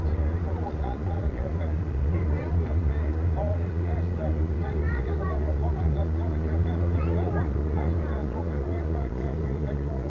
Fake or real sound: fake